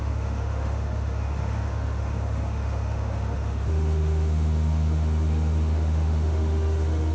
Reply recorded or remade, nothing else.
remade